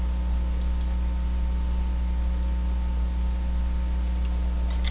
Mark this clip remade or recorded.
recorded